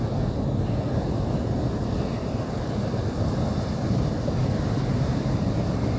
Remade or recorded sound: recorded